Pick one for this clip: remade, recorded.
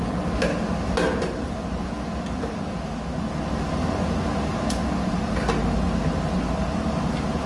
recorded